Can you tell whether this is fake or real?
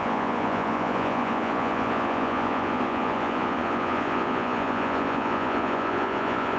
fake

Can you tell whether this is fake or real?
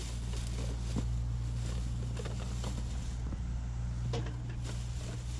real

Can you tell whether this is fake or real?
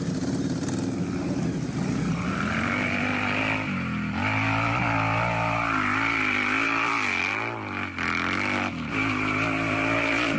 real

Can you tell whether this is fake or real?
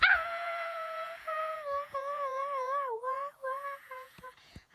fake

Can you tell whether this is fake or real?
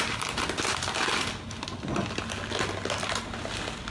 real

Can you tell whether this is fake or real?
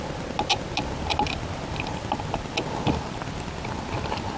real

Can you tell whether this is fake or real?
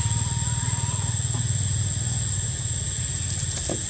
real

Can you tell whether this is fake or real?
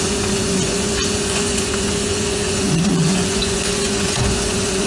fake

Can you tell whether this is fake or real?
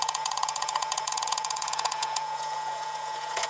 fake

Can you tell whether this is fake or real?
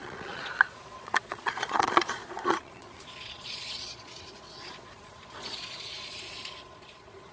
fake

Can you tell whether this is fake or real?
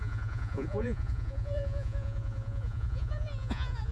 fake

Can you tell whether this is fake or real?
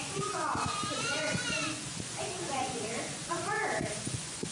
fake